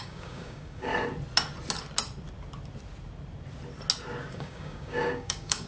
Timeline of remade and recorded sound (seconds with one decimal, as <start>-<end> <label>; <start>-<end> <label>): 0.0-0.9 remade; 0.9-4.3 recorded; 4.3-5.7 remade